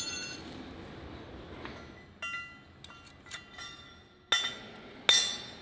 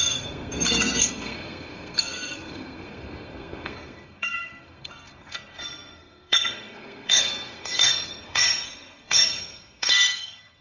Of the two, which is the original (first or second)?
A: first